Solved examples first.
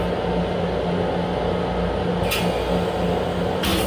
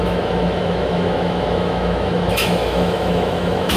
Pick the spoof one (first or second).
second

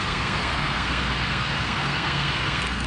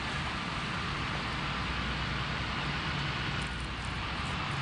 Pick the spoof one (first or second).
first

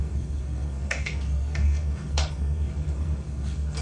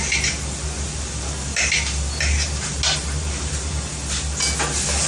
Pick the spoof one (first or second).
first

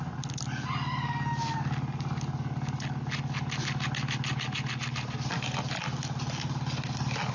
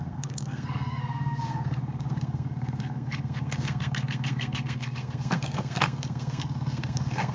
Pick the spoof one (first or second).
second